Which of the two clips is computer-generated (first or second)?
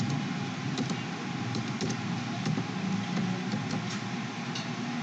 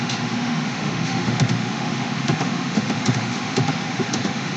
second